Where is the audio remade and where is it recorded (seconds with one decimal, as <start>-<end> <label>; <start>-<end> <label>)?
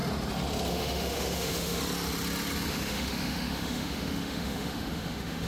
0.0-0.7 recorded; 0.7-1.8 remade; 1.8-2.7 recorded; 2.7-5.5 remade